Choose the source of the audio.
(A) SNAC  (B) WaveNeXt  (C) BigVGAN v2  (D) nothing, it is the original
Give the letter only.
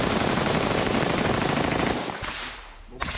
C